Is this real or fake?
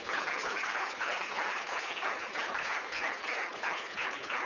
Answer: fake